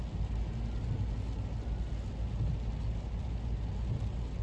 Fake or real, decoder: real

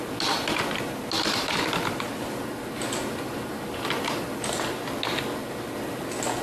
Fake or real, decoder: real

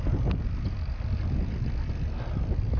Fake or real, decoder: real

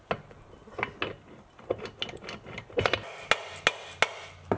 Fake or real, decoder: real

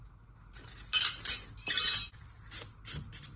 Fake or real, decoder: real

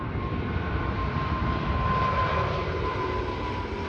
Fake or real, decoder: fake, vocoder, BigVGAN v2